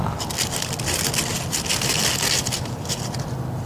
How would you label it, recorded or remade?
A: recorded